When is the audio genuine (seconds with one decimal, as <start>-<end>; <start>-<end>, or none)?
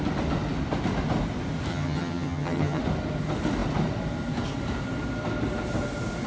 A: 0.0-1.7; 2.8-6.3